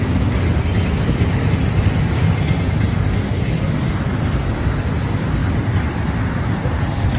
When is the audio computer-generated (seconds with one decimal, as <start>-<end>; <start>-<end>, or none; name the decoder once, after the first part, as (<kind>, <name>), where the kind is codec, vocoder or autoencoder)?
none